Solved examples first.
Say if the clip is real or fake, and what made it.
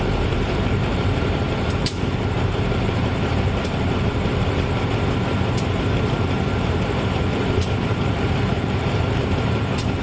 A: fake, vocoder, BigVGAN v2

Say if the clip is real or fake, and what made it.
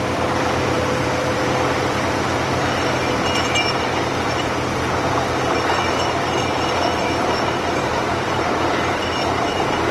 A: fake, vocoder, BigVGAN v2